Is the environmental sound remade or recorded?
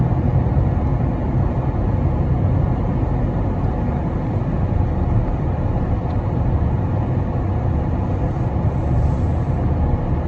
recorded